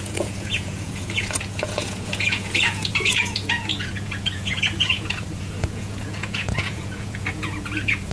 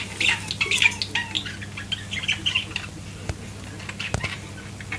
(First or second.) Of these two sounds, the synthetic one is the first